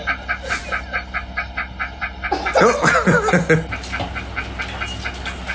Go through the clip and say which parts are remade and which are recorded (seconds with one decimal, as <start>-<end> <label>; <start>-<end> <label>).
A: 0.0-5.5 recorded